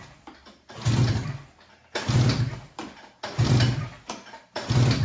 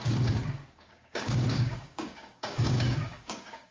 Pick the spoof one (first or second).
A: second